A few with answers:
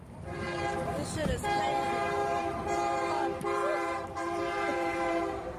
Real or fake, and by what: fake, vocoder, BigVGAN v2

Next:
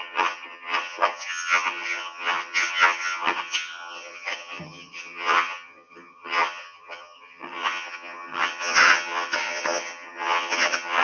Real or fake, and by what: fake, vocoder, HiFi-GAN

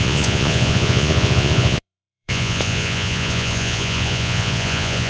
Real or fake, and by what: fake, vocoder, Vocos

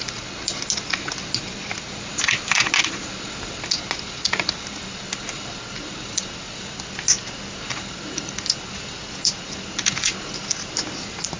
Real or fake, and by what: real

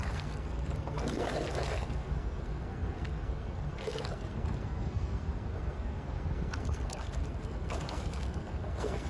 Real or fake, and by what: fake, codec, SNAC